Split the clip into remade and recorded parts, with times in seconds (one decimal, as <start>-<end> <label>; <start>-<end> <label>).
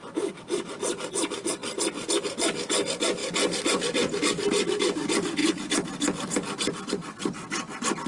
0.0-8.1 recorded